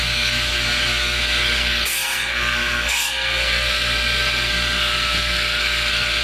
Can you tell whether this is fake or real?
fake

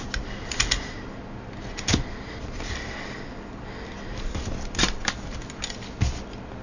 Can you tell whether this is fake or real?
real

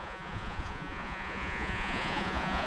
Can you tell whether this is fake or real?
fake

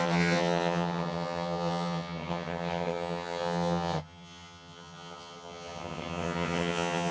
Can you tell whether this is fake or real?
fake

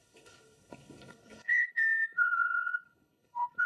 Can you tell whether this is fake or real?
fake